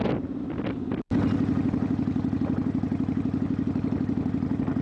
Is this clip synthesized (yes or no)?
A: no